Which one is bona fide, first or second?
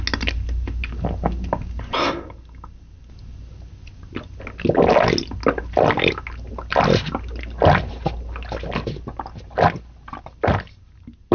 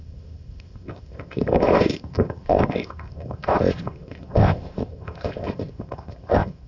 first